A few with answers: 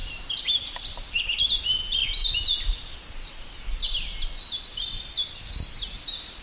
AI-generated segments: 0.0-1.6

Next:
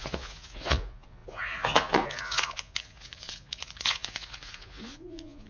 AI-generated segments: 0.0-5.5